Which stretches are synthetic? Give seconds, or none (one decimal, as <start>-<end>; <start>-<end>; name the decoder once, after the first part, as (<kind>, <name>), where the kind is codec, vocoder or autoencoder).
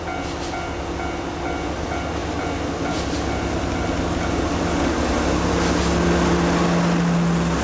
none